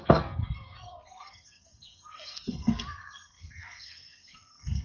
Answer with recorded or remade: remade